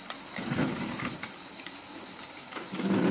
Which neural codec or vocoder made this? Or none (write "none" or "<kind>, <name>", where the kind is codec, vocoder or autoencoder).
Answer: none